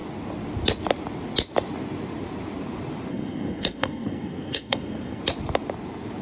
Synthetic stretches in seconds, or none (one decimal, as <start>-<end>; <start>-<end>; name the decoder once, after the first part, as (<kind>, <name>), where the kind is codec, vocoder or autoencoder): 3.1-5.2 (codec, SNAC)

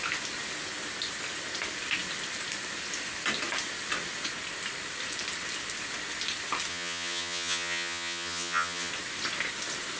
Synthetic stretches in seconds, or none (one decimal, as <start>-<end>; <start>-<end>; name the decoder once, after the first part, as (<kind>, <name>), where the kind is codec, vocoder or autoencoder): 6.7-8.9 (vocoder, HiFi-GAN)